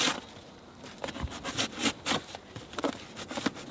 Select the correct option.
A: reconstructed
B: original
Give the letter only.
B